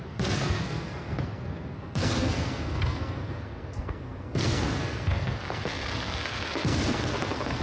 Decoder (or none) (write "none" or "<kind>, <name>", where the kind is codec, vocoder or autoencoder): codec, SNAC